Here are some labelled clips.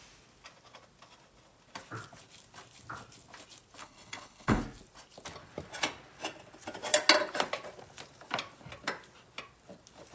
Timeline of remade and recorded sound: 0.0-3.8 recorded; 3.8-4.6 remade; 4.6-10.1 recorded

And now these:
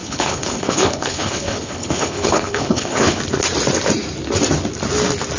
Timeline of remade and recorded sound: 0.0-3.2 remade; 3.2-5.4 recorded

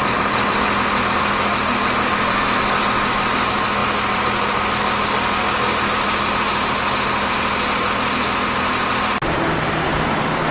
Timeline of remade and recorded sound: 0.0-10.5 recorded